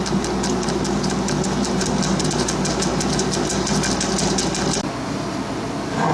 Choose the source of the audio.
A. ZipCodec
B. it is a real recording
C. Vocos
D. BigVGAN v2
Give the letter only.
B